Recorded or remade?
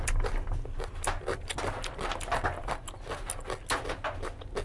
recorded